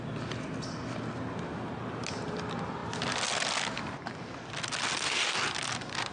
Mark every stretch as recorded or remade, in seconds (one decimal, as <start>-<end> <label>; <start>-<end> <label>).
0.0-6.1 recorded